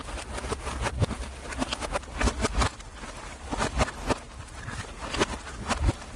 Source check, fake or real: real